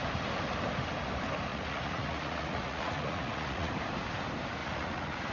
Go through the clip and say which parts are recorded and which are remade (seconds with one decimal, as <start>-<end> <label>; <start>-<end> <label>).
0.0-1.5 recorded; 1.5-3.7 remade; 3.7-4.6 recorded; 4.6-5.3 remade